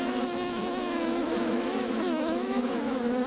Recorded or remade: remade